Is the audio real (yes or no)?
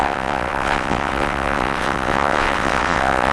no